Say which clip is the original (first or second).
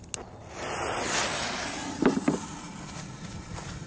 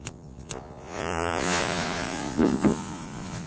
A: first